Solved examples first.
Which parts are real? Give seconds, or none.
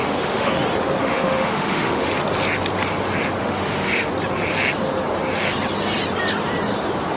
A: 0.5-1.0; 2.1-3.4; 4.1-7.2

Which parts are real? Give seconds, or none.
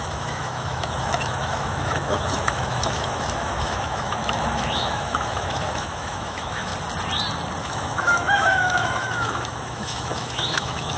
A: 6.7-7.6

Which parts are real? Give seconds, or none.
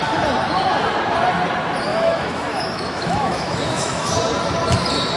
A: 0.0-1.9; 4.1-5.2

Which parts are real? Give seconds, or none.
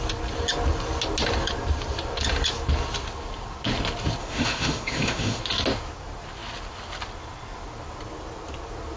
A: 0.0-4.2; 5.4-9.0